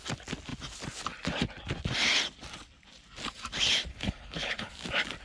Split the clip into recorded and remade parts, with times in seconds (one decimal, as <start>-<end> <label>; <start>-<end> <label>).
0.0-3.9 recorded; 3.9-4.7 remade; 4.7-5.2 recorded